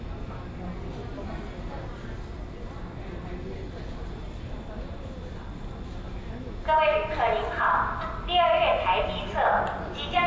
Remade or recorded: recorded